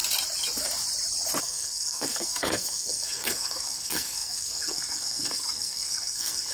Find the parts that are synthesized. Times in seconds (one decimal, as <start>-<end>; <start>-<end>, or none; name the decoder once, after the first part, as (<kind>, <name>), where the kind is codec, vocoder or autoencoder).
1.4-6.5 (codec, SNAC)